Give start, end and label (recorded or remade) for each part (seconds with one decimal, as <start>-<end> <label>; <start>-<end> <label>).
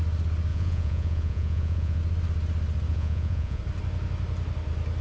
0.0-0.5 recorded; 0.5-2.0 remade; 2.0-2.9 recorded; 2.9-3.6 remade; 3.6-5.0 recorded